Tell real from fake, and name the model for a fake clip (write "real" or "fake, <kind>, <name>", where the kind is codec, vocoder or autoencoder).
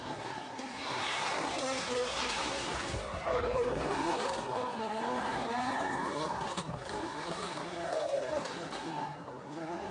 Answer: fake, codec, SNAC